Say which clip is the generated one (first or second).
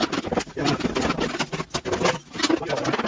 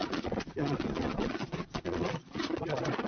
second